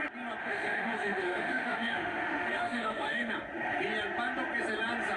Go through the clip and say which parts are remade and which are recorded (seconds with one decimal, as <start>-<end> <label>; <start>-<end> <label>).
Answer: 0.0-0.4 recorded; 0.4-3.3 remade; 3.3-5.2 recorded